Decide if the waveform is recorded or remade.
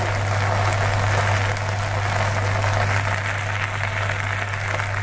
recorded